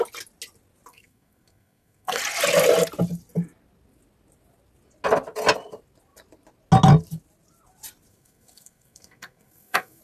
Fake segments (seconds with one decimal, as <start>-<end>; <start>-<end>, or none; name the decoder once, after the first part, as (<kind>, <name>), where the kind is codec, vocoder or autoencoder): 0.9-2.2 (codec, SNAC); 8.1-10.0